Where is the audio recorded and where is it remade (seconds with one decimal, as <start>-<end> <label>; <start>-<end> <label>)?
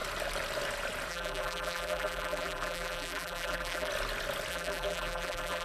0.0-1.1 recorded; 1.1-3.9 remade; 3.9-4.5 recorded; 4.5-5.6 remade